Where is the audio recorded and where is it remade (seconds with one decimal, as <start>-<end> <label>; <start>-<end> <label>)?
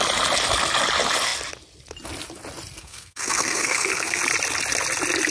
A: 0.0-2.8 recorded; 2.8-4.2 remade; 4.2-5.3 recorded